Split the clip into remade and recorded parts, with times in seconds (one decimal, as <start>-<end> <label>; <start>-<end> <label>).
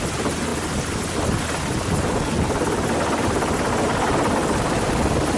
0.0-5.4 recorded